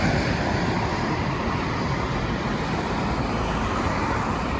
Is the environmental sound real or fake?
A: fake